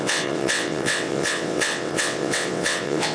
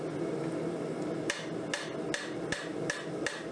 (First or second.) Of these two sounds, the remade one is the first